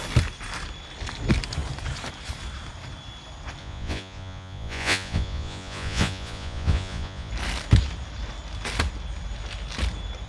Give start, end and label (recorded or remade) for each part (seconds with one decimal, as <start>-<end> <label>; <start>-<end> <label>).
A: 0.0-3.6 recorded; 3.6-7.3 remade; 7.3-10.3 recorded